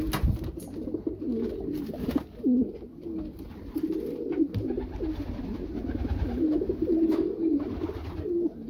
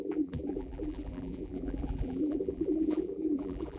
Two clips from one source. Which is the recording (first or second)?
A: first